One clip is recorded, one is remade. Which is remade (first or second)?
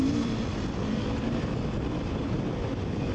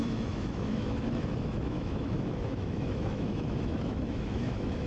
second